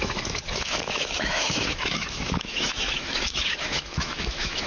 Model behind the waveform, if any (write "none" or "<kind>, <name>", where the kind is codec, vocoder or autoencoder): autoencoder, DAC-VAE